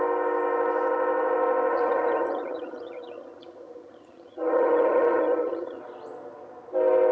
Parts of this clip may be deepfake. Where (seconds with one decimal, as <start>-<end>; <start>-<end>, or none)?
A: 1.7-5.8